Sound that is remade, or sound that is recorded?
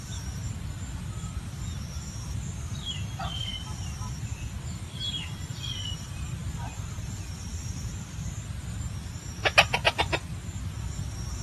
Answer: recorded